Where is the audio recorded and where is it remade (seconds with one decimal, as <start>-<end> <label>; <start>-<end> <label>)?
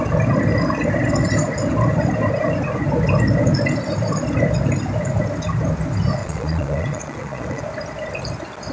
0.0-6.2 recorded; 6.2-7.6 remade; 7.6-8.7 recorded